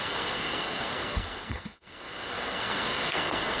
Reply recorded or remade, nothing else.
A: remade